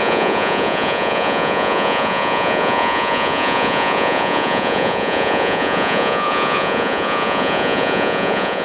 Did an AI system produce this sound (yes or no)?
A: yes